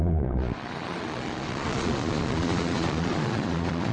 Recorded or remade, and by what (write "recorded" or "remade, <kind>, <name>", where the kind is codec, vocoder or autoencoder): remade, vocoder, Vocos